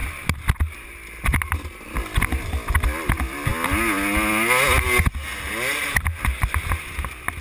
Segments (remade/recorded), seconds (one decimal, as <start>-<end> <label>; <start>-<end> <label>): 0.0-7.4 recorded

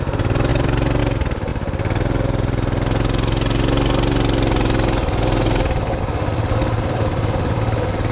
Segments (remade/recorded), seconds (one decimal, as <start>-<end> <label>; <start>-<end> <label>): 0.0-1.5 remade; 1.5-6.0 recorded; 6.0-8.1 remade